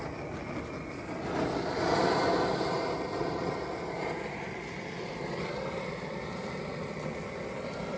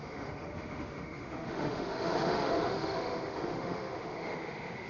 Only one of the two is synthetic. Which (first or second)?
second